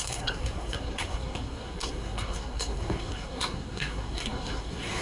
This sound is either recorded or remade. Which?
remade